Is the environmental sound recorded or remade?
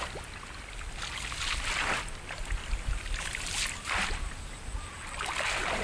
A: recorded